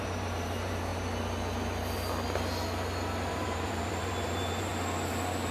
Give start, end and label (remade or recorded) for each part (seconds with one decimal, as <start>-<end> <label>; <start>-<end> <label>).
0.0-0.9 remade; 0.9-3.3 recorded; 3.3-4.7 remade; 4.7-5.5 recorded